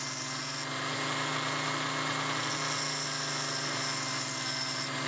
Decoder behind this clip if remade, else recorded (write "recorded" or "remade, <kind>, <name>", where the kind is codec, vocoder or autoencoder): recorded